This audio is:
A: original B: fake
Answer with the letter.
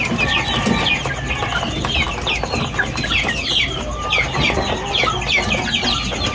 A